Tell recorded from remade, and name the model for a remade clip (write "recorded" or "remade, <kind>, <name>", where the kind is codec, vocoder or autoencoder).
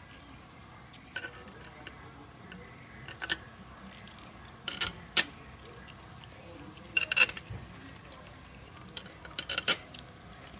remade, vocoder, BigVGAN v2